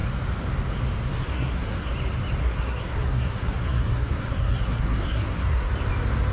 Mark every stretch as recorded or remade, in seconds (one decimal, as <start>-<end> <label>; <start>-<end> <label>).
0.0-1.1 recorded; 1.1-1.9 remade; 1.9-2.4 recorded; 2.4-5.7 remade; 5.7-6.3 recorded